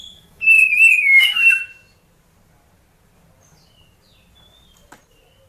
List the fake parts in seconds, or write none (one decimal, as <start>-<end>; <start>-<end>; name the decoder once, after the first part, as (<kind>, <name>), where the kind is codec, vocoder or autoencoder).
0.0-1.6 (autoencoder, DAC-VAE)